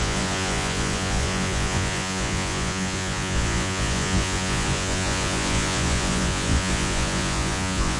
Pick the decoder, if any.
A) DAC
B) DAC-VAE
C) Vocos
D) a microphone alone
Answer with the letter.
C